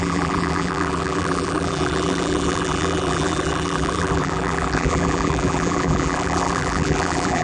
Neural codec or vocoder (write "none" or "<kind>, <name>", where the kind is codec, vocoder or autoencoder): vocoder, BigVGAN v2